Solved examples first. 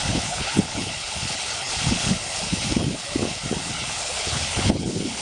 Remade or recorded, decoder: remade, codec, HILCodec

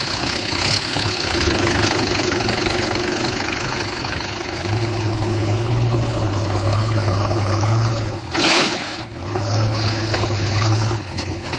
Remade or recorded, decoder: remade, codec, HILCodec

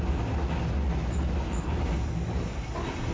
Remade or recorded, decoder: recorded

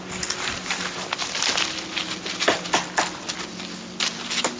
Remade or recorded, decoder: recorded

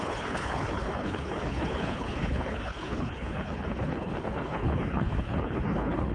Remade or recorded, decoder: remade, codec, HILCodec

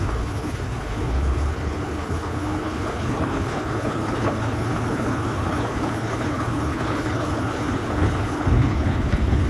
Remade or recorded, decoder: remade, codec, HILCodec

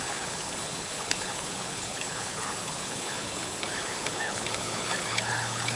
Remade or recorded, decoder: remade, codec, HILCodec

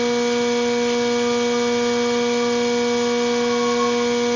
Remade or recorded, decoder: recorded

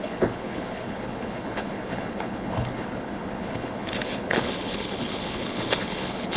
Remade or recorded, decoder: remade, codec, HILCodec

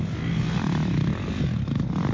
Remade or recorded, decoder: recorded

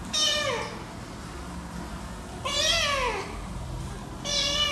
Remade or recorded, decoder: recorded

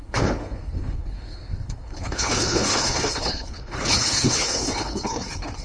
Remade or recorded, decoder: remade, codec, HILCodec